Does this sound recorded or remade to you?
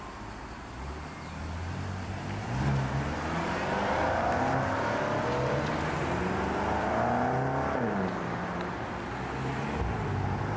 recorded